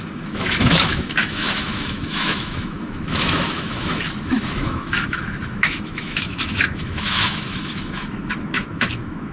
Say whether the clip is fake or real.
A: fake